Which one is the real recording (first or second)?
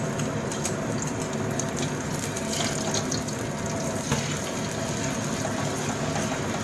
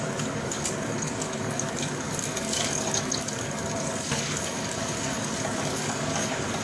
first